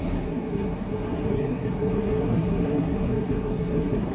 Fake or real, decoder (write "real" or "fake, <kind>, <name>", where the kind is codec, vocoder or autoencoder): fake, codec, SNAC